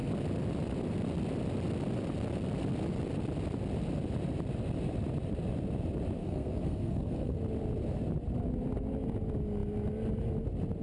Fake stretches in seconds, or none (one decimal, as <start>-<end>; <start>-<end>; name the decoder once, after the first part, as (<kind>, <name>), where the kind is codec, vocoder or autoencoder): 6.2-7.4 (codec, SNAC)